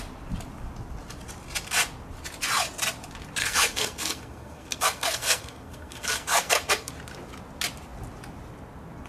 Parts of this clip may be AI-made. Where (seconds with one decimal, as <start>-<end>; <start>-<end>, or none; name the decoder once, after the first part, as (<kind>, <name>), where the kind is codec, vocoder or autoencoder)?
3.4-6.9 (codec, SNAC)